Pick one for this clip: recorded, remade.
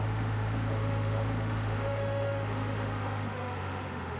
remade